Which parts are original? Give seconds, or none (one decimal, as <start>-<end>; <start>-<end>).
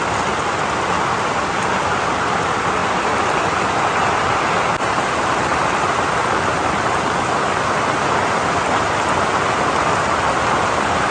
0.0-11.1